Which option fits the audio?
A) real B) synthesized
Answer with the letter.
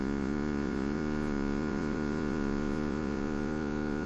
B